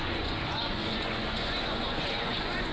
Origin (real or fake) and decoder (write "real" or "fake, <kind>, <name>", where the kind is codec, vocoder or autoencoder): fake, vocoder, Vocos